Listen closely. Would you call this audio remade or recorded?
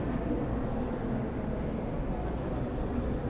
recorded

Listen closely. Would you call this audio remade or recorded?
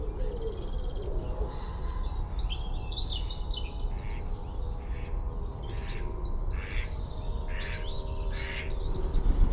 recorded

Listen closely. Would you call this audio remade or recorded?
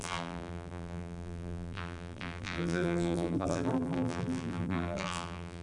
remade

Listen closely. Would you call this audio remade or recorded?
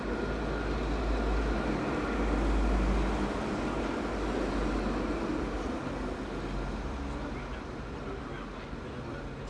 recorded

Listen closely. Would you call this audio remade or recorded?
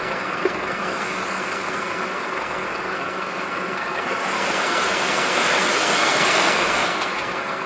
remade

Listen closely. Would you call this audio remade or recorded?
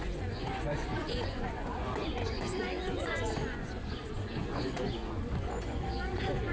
remade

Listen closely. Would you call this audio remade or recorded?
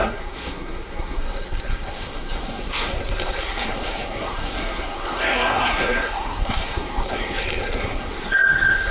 remade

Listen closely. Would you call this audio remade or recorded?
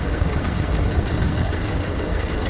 remade